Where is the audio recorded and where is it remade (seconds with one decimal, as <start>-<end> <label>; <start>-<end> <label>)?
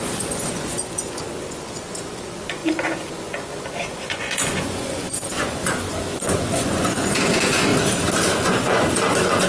0.0-7.7 remade; 7.7-8.3 recorded; 8.3-9.5 remade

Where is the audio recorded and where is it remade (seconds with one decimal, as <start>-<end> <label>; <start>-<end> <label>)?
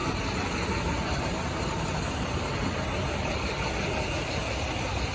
0.0-5.1 recorded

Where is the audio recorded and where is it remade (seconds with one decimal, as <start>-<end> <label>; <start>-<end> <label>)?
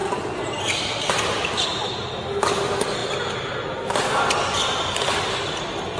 0.0-6.0 recorded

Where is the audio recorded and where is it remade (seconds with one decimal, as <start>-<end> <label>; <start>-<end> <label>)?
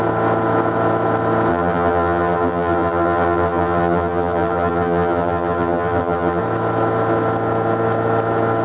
0.0-1.5 recorded; 1.5-6.4 remade; 6.4-8.6 recorded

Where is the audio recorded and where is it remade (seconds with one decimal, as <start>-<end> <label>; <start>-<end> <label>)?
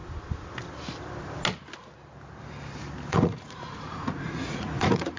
0.0-3.1 recorded; 3.1-5.2 remade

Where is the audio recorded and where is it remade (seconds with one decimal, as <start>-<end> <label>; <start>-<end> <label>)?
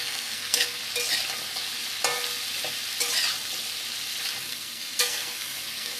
0.0-0.8 remade; 0.8-4.4 recorded; 4.4-6.0 remade